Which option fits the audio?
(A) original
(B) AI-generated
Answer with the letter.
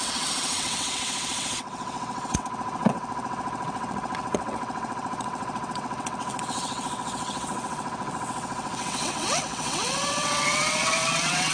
B